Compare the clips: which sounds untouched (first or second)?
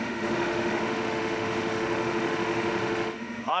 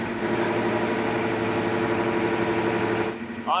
second